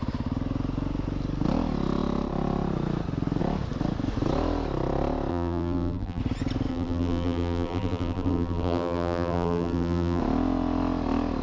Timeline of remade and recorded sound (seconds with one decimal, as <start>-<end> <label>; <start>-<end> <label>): 0.0-5.3 recorded; 5.3-6.2 remade; 6.2-6.7 recorded; 6.7-10.2 remade; 10.2-11.4 recorded

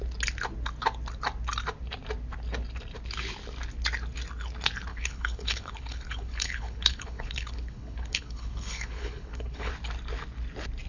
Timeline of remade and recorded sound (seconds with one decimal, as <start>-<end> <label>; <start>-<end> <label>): 0.0-4.9 recorded; 4.9-9.7 remade; 9.7-10.9 recorded

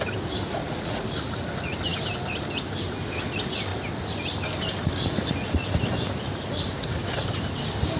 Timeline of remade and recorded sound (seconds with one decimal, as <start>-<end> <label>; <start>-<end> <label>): 0.0-0.6 recorded; 0.6-1.3 remade; 1.3-8.0 recorded

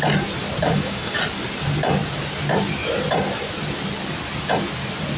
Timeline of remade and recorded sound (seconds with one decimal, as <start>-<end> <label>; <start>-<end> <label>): 0.0-0.6 recorded; 0.6-1.2 remade; 1.2-5.2 recorded

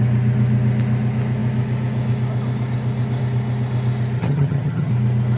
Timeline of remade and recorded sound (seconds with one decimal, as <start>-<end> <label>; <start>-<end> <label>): 0.0-4.2 recorded; 4.2-4.9 remade; 4.9-5.4 recorded

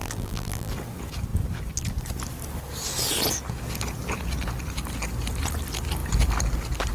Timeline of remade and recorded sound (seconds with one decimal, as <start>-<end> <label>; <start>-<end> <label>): 0.0-0.7 remade; 0.7-6.9 recorded

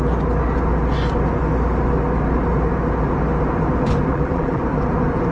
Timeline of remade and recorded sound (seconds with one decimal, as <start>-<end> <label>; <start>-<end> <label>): 0.0-4.1 recorded; 4.1-4.6 remade; 4.6-5.3 recorded